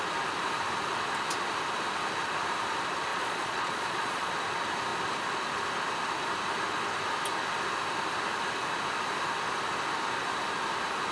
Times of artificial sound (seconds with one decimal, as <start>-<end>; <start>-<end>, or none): 3.1-4.3